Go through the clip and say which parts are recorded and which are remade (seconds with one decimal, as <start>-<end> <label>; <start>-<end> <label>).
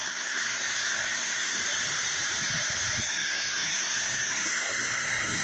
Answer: 0.0-1.6 remade; 1.6-3.0 recorded; 3.0-5.4 remade